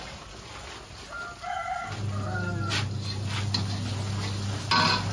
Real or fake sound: real